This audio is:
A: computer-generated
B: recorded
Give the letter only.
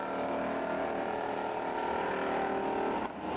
B